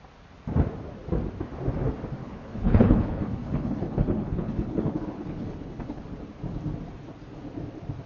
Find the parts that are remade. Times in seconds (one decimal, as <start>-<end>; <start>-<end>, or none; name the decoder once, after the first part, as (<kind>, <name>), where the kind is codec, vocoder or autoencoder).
2.2-6.0 (codec, HILCodec)